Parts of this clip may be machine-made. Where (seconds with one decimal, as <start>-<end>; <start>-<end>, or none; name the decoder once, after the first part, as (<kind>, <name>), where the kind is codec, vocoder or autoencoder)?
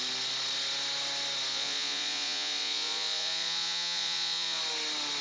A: 1.5-4.6 (vocoder, Vocos)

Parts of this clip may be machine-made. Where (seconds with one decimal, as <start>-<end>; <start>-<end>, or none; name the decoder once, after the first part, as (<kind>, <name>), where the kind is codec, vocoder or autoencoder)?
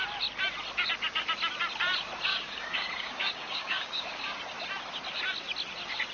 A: 2.3-4.4 (codec, DAC)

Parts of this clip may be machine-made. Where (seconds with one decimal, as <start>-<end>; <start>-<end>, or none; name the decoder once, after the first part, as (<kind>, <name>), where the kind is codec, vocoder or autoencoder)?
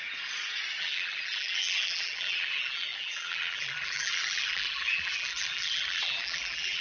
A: 0.8-6.8 (vocoder, BigVGAN v2)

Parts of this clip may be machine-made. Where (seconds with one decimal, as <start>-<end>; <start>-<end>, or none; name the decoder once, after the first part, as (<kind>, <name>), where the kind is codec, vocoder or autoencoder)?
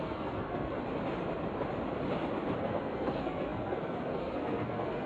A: 0.0-0.8 (codec, SNAC); 2.6-5.1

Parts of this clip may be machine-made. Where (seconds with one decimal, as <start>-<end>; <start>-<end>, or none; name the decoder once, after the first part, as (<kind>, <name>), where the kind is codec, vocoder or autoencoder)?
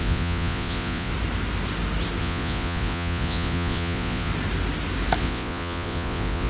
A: 0.0-1.1 (vocoder, Vocos); 2.2-4.3; 5.2-6.5